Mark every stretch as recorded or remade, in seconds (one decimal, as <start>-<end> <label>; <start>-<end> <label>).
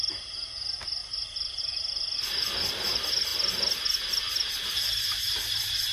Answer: 0.0-5.9 recorded